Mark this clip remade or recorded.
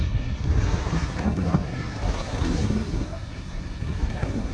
remade